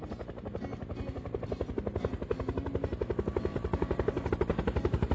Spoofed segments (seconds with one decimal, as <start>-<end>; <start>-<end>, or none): 0.8-1.7; 3.5-4.3